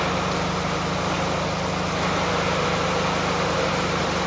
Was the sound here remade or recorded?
recorded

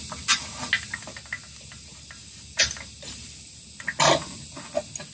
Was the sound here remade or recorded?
recorded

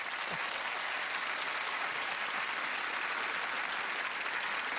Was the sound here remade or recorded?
recorded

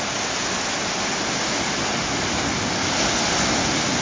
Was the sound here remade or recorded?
recorded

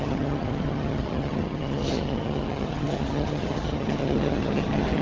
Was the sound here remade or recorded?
remade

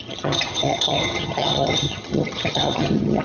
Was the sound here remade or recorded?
remade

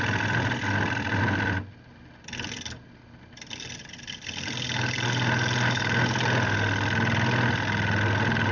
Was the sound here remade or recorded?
recorded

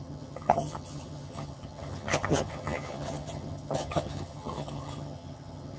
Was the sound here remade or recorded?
remade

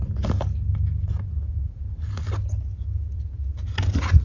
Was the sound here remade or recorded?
recorded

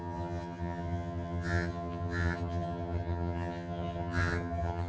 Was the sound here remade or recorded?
remade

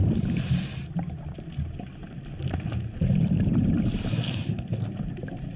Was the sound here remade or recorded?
recorded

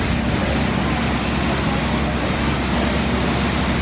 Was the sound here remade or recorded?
recorded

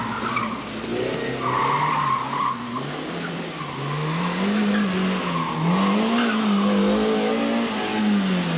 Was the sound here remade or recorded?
recorded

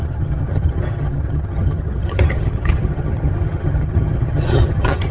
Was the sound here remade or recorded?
remade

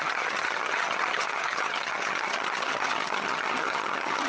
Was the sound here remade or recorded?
remade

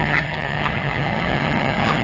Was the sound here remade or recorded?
remade